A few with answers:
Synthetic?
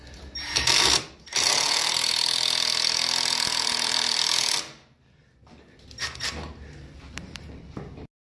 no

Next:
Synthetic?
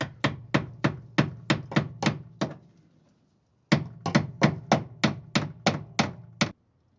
no